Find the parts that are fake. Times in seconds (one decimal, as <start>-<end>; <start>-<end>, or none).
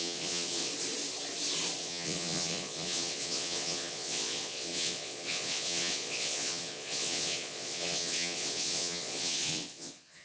0.0-0.7; 1.8-10.2